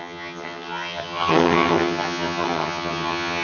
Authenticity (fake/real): fake